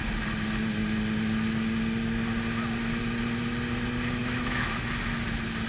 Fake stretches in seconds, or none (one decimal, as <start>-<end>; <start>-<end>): 4.2-4.9